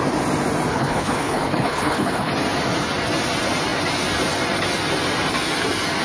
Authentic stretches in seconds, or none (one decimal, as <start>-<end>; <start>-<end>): 0.0-0.7; 2.3-6.0